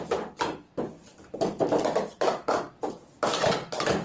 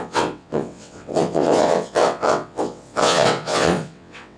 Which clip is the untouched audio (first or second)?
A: first